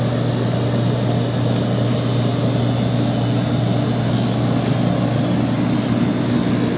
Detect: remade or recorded recorded